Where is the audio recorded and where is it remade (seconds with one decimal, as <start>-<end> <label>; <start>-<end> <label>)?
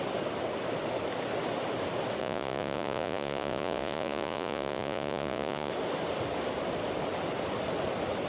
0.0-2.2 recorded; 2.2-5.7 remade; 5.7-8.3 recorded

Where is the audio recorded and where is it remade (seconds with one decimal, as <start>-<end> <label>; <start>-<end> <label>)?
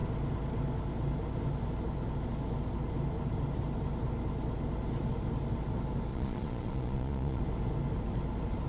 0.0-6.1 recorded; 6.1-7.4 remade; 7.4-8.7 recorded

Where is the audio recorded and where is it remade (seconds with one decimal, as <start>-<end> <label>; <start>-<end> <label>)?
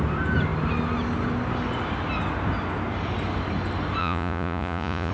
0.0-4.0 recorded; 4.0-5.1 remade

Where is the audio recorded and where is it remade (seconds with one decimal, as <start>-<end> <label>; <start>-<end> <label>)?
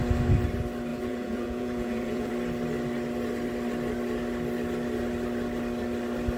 0.0-0.9 recorded; 0.9-2.3 remade; 2.3-6.4 recorded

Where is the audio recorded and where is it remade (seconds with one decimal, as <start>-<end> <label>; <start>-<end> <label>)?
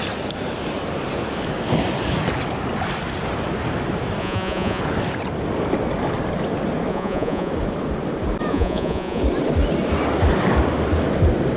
0.0-4.2 recorded; 4.2-4.8 remade; 4.8-6.9 recorded; 6.9-7.5 remade; 7.5-8.5 recorded; 8.5-9.2 remade; 9.2-11.6 recorded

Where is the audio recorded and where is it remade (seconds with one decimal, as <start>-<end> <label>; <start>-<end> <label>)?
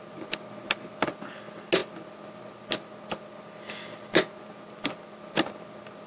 0.0-6.1 recorded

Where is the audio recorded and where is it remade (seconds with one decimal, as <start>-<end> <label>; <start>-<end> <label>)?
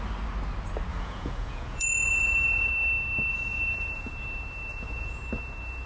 0.0-0.9 recorded; 0.9-2.7 remade; 2.7-3.3 recorded; 3.3-4.1 remade; 4.1-4.7 recorded; 4.7-5.2 remade; 5.2-5.9 recorded